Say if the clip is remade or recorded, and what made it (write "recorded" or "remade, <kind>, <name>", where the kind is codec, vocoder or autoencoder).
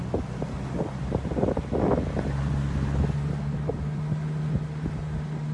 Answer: recorded